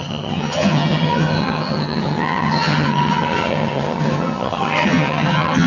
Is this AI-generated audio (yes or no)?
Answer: yes